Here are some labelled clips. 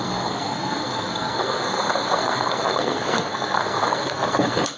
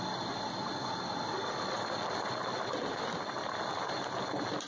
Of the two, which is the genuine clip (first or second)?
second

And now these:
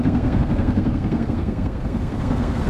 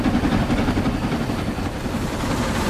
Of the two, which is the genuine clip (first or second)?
second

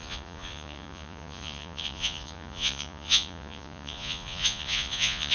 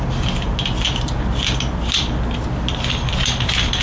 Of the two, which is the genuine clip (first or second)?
second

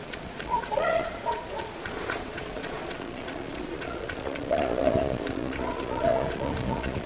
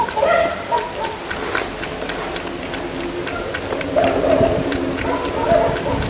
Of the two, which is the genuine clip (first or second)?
second